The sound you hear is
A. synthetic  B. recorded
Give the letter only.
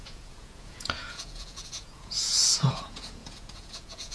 A